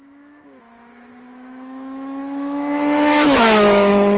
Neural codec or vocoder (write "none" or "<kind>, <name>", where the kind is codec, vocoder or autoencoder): autoencoder, DAC-VAE